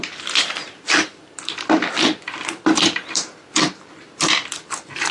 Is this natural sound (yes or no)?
no